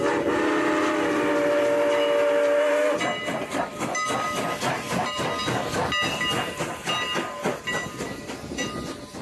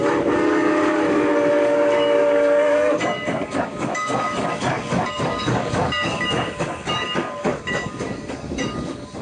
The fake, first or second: second